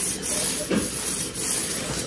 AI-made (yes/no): no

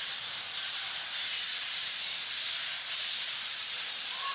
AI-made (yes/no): yes